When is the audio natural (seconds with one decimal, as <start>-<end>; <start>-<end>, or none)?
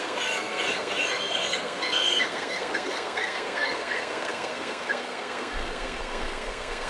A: none